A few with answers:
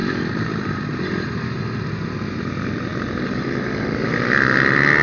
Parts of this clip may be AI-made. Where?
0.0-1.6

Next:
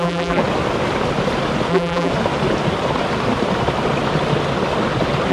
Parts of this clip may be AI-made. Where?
0.0-0.4; 1.7-2.1

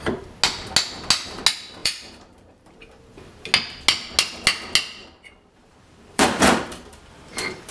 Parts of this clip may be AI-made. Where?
1.8-3.4; 5.0-7.0